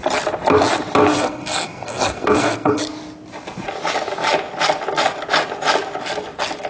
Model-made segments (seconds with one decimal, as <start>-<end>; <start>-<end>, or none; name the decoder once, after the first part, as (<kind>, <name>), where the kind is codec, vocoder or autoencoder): 1.0-2.8 (codec, SNAC)